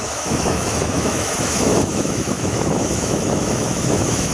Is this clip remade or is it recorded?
remade